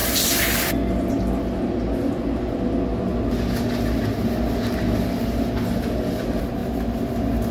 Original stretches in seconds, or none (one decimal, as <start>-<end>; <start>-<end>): 0.0-7.5